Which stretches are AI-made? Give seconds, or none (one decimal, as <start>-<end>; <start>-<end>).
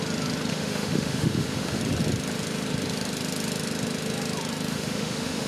0.5-1.8; 4.7-5.5